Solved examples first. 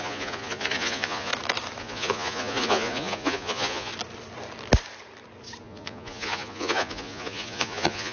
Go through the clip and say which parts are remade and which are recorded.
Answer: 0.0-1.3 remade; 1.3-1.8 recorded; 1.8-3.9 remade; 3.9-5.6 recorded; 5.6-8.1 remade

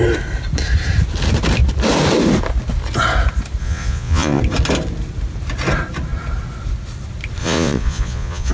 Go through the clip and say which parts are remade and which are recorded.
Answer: 0.0-3.6 recorded; 3.6-4.4 remade; 4.4-7.4 recorded; 7.4-8.5 remade

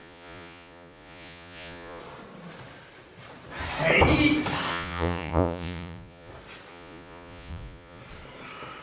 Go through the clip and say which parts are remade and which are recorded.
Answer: 0.0-2.0 remade; 2.0-4.7 recorded; 4.7-6.3 remade; 6.3-6.7 recorded; 6.7-8.0 remade; 8.0-8.8 recorded

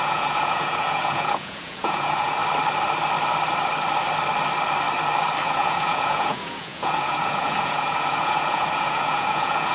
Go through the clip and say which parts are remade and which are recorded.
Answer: 0.0-2.4 remade; 2.4-5.4 recorded; 5.4-9.7 remade

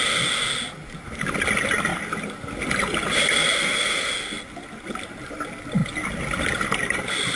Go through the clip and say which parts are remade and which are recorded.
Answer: 0.0-7.4 recorded

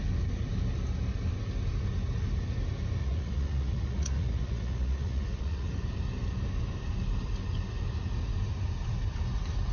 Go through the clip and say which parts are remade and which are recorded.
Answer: 0.0-3.0 recorded; 3.0-5.7 remade; 5.7-9.7 recorded

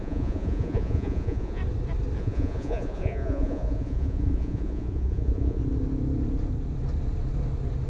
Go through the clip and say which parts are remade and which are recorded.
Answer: 0.0-1.6 remade; 1.6-2.2 recorded; 2.2-5.6 remade; 5.6-7.9 recorded

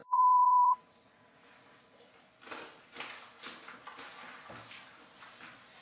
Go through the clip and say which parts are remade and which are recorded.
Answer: 0.0-2.1 remade; 2.1-5.8 recorded